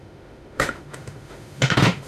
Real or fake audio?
fake